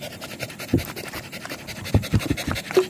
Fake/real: real